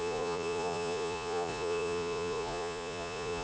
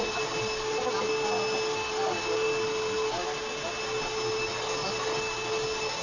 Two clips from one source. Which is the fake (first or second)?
first